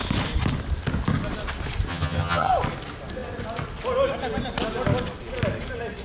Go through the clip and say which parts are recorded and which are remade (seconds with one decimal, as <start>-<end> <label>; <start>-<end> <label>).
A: 0.0-1.9 recorded; 1.9-2.5 remade; 2.5-6.0 recorded